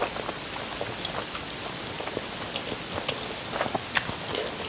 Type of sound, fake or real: real